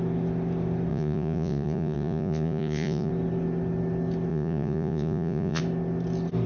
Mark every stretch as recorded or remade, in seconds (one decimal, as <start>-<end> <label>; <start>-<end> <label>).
0.0-0.9 recorded; 0.9-3.1 remade; 3.1-4.3 recorded; 4.3-5.6 remade; 5.6-6.5 recorded